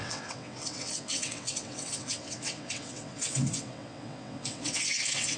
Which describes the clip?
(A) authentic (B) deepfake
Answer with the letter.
B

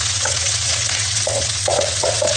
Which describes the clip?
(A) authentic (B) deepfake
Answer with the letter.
B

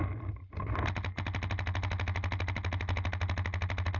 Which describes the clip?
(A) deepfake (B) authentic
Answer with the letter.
B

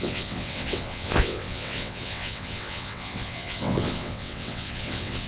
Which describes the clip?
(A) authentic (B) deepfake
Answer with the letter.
B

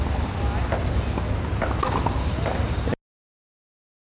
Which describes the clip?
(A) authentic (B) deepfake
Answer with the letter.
A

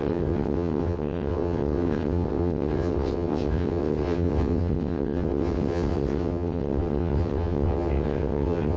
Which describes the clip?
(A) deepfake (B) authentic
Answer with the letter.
A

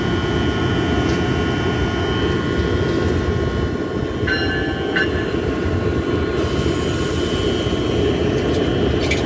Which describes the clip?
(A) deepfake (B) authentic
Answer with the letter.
B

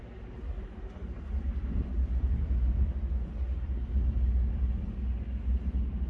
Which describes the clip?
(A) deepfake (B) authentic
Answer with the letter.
B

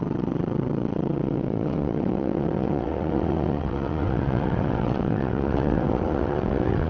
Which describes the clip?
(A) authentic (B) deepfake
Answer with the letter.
B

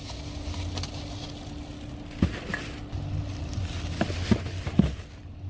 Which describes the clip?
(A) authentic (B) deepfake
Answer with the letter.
A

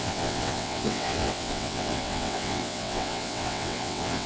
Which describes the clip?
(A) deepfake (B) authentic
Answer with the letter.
A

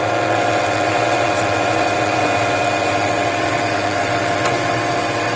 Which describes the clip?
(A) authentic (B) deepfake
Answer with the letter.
B